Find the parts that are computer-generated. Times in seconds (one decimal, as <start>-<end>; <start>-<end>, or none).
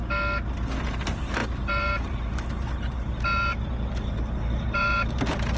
0.8-5.6